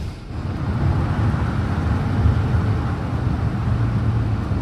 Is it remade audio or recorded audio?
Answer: recorded